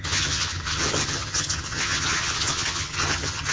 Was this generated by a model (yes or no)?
yes